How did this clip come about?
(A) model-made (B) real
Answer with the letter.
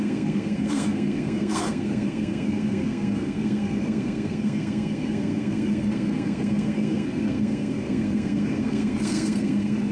A